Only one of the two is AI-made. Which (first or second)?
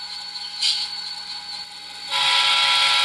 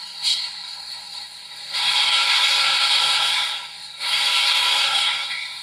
second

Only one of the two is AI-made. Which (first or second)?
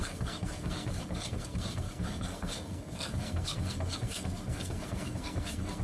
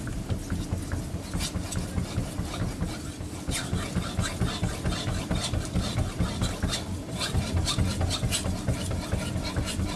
first